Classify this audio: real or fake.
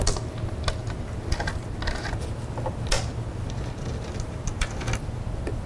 real